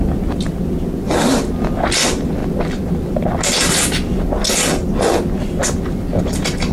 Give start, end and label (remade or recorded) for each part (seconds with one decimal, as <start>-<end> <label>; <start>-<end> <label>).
0.0-6.7 recorded